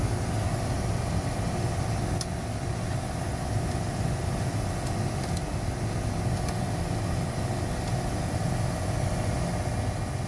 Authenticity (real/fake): real